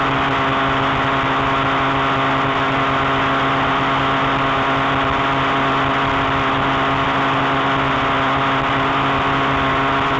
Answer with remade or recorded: recorded